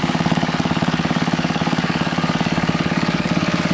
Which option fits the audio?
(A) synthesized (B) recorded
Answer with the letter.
A